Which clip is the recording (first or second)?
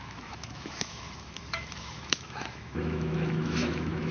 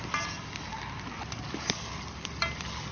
second